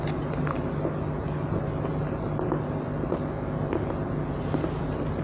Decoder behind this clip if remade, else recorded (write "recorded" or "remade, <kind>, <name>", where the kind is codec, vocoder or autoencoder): recorded